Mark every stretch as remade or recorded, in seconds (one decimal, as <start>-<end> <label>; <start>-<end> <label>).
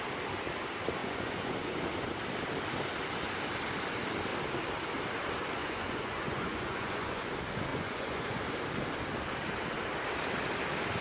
0.0-1.0 recorded; 1.0-1.9 remade; 1.9-5.6 recorded; 5.6-7.3 remade; 7.3-7.7 recorded; 7.7-8.4 remade; 8.4-11.0 recorded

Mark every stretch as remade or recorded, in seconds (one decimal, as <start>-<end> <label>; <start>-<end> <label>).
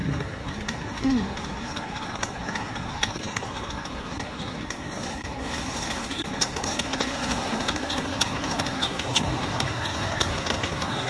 0.0-11.1 remade